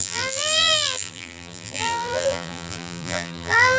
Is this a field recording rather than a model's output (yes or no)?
no